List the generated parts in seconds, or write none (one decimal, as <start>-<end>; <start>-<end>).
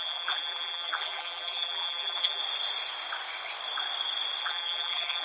0.0-2.4; 4.4-5.2